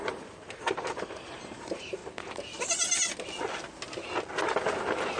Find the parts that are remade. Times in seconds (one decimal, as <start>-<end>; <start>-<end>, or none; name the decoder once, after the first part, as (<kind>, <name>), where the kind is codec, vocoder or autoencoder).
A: 0.0-2.0 (vocoder, BigVGAN v2)